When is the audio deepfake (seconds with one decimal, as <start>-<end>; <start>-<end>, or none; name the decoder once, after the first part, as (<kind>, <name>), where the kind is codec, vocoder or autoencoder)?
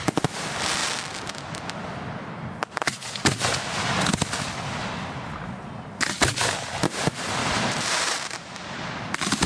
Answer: 7.4-8.4 (vocoder, BigVGAN v2)